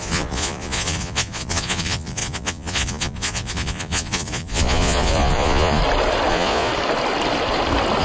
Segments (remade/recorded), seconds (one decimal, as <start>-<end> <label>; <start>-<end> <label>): 0.0-5.8 remade; 5.8-6.3 recorded; 6.3-6.7 remade; 6.7-8.0 recorded